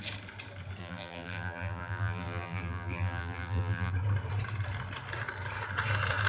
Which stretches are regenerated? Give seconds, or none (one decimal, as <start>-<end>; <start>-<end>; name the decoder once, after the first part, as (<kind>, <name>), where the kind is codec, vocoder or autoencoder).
0.8-3.9 (vocoder, BigVGAN v2)